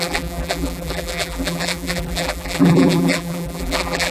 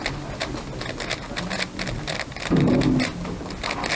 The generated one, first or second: first